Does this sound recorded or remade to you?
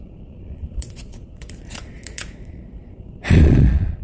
remade